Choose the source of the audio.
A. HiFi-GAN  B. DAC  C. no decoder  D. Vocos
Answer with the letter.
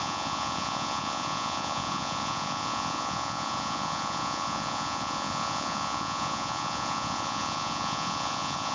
D